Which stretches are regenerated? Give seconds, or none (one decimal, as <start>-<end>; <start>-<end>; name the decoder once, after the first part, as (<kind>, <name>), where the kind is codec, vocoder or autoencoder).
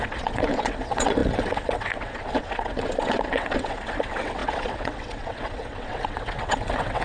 0.0-7.0 (vocoder, WaveNeXt)